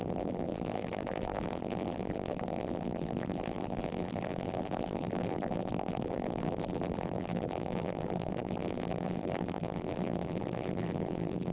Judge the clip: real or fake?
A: fake